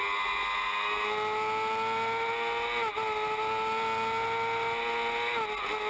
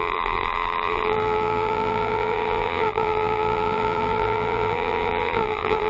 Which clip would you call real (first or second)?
first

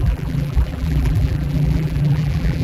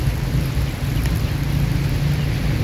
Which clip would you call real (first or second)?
second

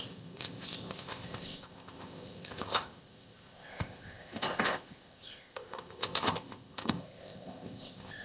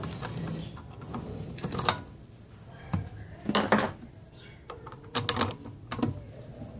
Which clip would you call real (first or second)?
second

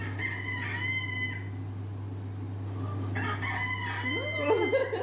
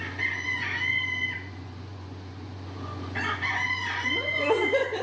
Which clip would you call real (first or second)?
first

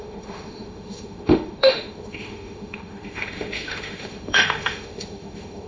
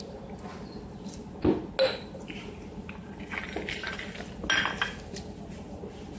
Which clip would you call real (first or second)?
second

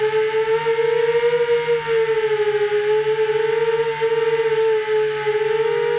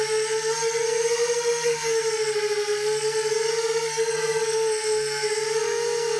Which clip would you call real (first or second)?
first